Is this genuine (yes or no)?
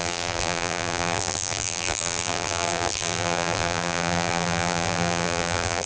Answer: no